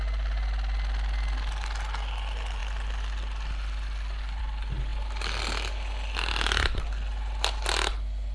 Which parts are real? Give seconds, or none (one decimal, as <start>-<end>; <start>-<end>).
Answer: 0.0-8.3